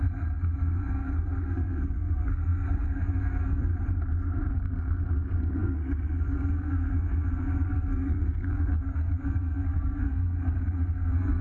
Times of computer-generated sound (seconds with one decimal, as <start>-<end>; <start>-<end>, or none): 0.0-3.7; 4.5-11.4